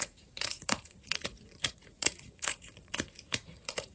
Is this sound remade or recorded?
remade